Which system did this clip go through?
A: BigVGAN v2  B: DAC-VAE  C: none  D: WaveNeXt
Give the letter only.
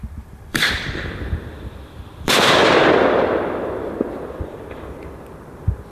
A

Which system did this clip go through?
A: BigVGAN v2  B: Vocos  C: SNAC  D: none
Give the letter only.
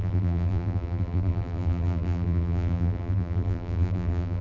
A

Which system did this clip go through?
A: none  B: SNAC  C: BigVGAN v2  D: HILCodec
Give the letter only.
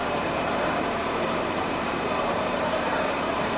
C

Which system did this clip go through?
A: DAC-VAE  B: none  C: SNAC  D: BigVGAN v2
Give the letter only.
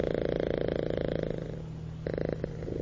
B